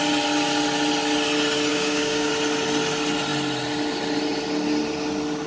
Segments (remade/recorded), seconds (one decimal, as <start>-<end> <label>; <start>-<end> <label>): 0.0-1.7 recorded; 1.7-2.3 remade; 2.3-5.5 recorded